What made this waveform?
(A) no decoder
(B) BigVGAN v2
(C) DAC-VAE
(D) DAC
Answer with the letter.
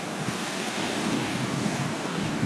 D